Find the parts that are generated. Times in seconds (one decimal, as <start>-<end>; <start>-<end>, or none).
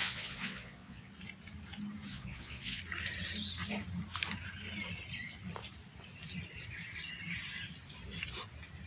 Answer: 0.0-1.1; 2.1-2.8